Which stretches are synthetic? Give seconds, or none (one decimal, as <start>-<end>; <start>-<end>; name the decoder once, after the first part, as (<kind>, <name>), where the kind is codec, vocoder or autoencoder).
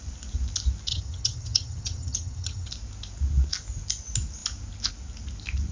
0.9-2.7 (vocoder, HiFi-GAN)